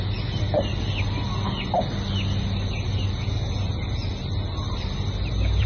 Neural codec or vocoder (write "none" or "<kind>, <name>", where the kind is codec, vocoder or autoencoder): none